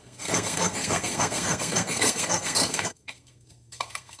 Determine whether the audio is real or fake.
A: fake